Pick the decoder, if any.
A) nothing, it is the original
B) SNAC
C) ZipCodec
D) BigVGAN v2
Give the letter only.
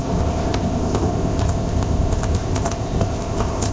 C